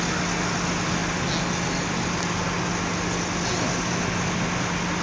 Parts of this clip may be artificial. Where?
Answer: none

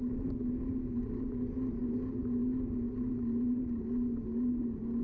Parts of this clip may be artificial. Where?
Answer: none

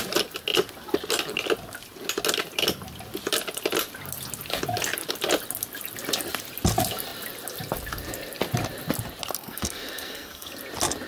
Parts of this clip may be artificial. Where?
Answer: 9.4-10.5 (codec, SNAC)